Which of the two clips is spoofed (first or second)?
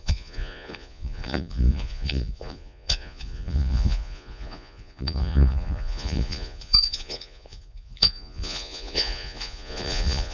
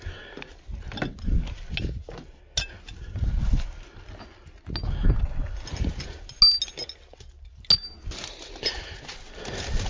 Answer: first